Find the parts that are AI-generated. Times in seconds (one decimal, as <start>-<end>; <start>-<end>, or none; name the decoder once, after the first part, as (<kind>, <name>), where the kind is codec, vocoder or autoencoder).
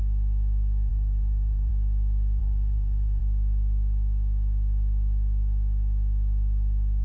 0.9-1.7 (vocoder, BigVGAN v2); 2.4-3.2